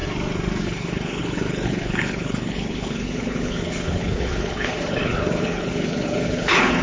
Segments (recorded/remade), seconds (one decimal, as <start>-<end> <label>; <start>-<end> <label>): 0.0-0.6 recorded; 0.6-6.8 remade